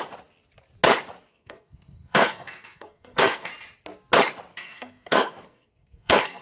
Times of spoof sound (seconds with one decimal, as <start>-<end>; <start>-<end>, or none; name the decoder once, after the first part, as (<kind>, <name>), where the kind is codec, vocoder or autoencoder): 1.3-3.5 (codec, SNAC); 4.5-6.4